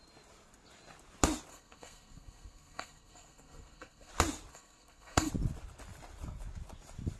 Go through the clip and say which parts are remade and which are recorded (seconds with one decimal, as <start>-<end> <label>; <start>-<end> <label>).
0.0-1.5 recorded; 1.5-4.1 remade; 4.1-4.5 recorded; 4.5-5.3 remade; 5.3-7.2 recorded